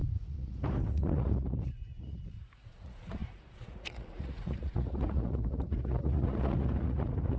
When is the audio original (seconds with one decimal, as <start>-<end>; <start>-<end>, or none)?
none